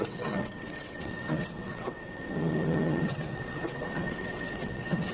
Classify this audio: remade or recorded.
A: remade